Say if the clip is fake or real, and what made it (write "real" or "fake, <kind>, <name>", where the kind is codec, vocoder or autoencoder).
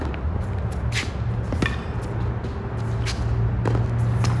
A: real